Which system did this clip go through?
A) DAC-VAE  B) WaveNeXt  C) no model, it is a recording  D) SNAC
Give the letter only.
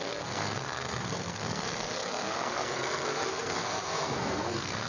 D